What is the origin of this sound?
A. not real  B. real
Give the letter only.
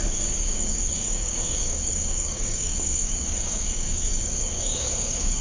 A